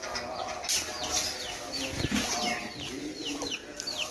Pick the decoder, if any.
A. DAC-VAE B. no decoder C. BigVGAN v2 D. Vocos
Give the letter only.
B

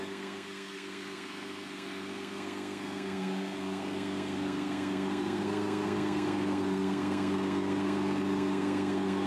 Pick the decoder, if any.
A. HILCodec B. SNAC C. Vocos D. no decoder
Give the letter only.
B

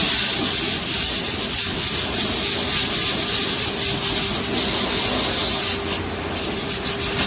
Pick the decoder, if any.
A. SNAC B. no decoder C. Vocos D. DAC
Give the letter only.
B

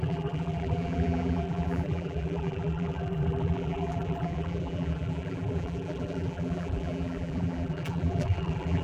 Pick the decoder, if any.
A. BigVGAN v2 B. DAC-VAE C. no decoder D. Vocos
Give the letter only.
A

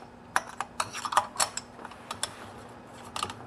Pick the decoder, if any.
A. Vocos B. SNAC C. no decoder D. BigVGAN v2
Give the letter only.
C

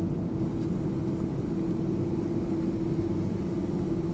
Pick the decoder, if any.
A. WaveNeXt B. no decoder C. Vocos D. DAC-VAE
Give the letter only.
B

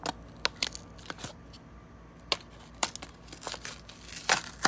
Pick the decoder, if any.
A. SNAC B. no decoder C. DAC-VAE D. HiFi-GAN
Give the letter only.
B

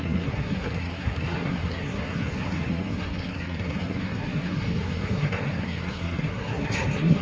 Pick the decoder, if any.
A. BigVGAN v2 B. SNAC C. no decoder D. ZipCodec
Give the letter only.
B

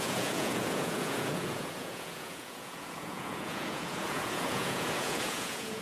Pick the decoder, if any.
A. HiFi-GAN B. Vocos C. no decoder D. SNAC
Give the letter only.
B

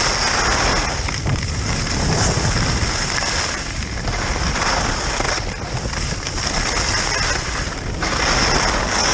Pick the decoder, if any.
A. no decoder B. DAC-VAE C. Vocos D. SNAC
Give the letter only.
A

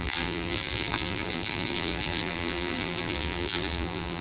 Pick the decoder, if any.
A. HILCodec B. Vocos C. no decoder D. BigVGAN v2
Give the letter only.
D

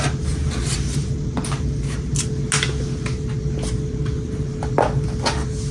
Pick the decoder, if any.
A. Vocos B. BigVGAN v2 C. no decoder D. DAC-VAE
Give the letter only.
C